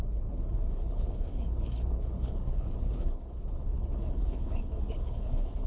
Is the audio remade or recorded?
remade